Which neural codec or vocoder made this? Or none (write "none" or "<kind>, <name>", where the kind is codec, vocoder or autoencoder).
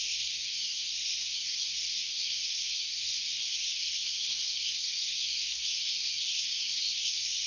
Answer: codec, SNAC